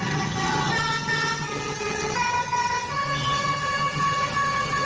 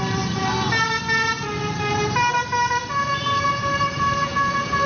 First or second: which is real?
second